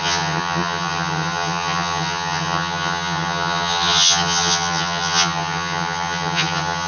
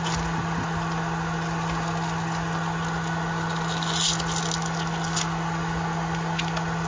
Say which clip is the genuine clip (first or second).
second